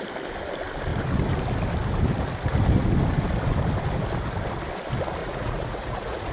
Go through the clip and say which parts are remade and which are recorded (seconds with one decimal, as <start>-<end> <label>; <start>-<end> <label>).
0.0-5.2 recorded; 5.2-6.3 remade